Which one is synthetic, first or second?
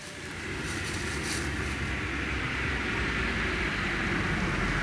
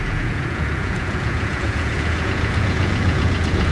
second